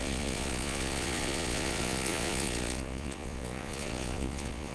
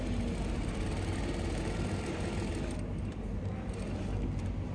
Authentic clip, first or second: second